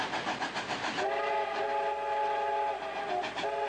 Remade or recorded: recorded